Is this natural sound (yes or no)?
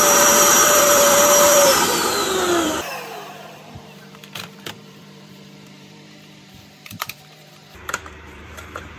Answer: no